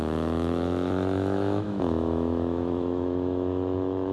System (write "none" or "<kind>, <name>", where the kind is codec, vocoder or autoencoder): autoencoder, DAC-VAE